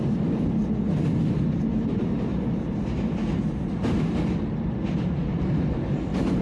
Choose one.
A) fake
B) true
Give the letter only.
B